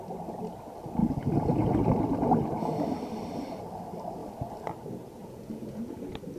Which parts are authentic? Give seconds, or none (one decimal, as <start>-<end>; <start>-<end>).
0.0-1.0; 1.8-5.2; 5.9-6.4